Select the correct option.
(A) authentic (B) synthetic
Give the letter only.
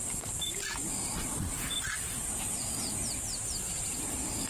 A